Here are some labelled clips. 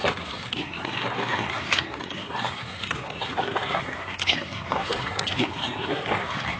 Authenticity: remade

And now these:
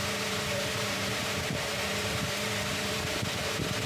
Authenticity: remade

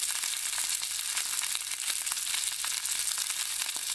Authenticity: recorded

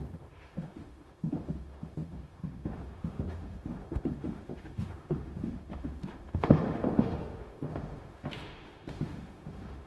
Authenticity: remade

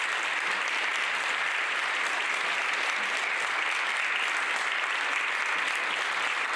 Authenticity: recorded